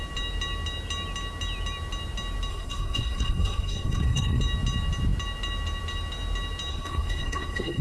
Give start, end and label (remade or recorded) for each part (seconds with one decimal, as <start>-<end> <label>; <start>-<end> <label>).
0.0-2.5 recorded; 2.5-4.4 remade; 4.4-6.7 recorded; 6.7-7.8 remade